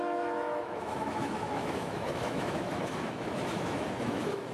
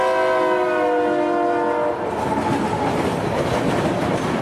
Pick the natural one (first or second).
second